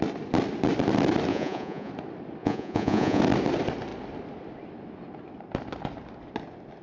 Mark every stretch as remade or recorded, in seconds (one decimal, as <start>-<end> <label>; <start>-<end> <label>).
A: 0.0-1.3 recorded; 1.3-1.9 remade; 1.9-2.4 recorded; 2.4-3.2 remade; 3.2-6.8 recorded